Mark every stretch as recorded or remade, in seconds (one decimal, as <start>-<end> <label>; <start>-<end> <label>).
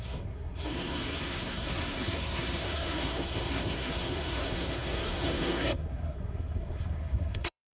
0.0-7.7 remade